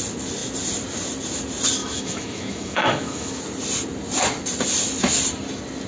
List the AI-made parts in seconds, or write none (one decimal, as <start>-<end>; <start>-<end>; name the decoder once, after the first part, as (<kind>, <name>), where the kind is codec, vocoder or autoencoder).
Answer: 1.8-3.4 (autoencoder, DAC-VAE)